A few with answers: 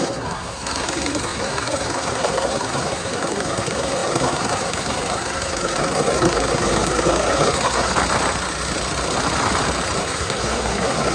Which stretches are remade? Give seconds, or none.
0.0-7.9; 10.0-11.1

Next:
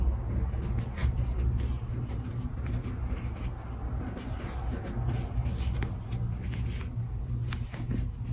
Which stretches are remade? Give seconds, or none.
none